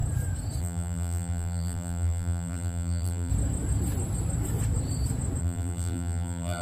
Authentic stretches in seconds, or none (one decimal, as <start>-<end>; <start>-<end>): 0.0-0.6; 3.3-5.4